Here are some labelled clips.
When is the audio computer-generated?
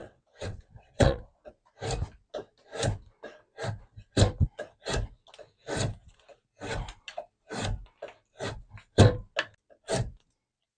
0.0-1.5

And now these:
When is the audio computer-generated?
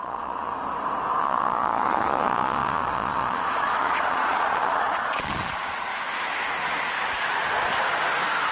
0.0-0.5; 1.2-5.9